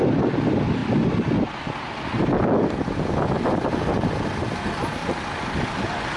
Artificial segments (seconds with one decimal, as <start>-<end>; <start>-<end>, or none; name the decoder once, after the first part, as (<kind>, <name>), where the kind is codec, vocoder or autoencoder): none